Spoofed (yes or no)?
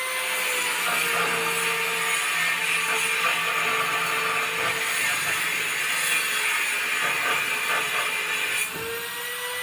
no